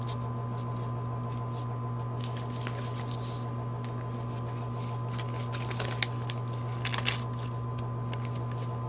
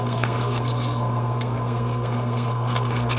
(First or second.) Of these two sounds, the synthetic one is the second